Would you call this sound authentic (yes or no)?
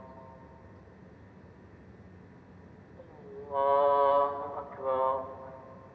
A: yes